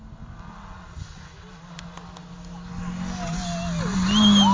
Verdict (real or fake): real